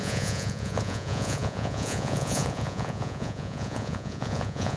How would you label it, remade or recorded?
remade